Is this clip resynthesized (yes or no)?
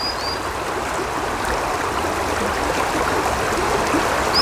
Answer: no